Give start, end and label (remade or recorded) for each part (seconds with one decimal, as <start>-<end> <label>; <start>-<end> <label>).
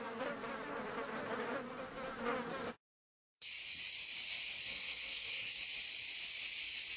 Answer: 0.0-3.0 recorded; 3.0-3.5 remade; 3.5-4.7 recorded; 4.7-5.6 remade; 5.6-7.0 recorded